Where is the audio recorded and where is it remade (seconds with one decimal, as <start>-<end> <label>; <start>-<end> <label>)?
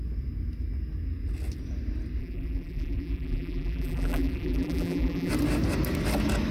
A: 0.0-2.2 recorded; 2.2-5.3 remade; 5.3-6.5 recorded